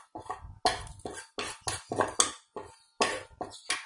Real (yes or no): yes